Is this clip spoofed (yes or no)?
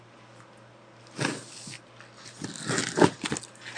no